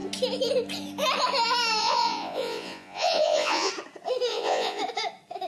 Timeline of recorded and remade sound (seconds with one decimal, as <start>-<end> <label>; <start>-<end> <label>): 0.0-1.8 recorded; 1.8-3.7 remade; 3.7-4.3 recorded; 4.3-4.8 remade; 4.8-5.5 recorded